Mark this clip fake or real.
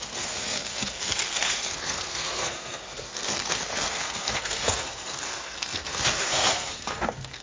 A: fake